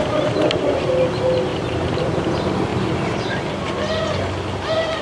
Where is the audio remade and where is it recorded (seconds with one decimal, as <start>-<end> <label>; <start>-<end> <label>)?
0.0-1.5 recorded; 1.5-2.3 remade; 2.3-2.7 recorded; 2.7-3.4 remade; 3.4-5.0 recorded